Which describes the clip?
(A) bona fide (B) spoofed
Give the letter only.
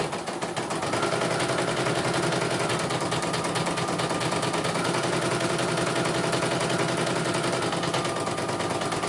A